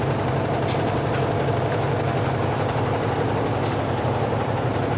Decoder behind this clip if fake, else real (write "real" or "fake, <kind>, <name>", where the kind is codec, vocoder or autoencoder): fake, vocoder, BigVGAN v2